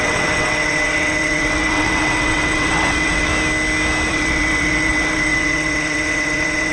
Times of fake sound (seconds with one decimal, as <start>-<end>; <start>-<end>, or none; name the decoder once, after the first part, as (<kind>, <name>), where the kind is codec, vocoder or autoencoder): 0.0-3.3 (vocoder, WaveNeXt); 4.1-6.7